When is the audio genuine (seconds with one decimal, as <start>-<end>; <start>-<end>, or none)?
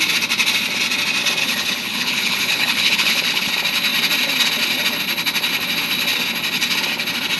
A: 0.0-1.4; 3.5-7.4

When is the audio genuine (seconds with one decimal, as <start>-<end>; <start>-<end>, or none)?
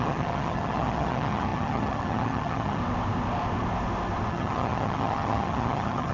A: 2.8-4.3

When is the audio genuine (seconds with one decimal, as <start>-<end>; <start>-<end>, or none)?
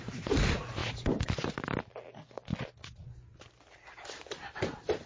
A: 2.5-3.9